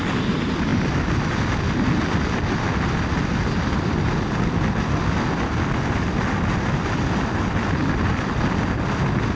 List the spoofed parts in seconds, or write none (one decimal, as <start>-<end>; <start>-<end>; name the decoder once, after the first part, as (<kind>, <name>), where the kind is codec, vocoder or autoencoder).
none